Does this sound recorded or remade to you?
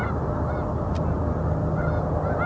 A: recorded